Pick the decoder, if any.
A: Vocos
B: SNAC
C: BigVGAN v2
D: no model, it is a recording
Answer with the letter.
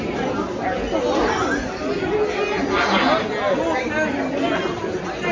D